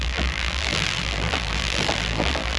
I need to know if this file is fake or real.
fake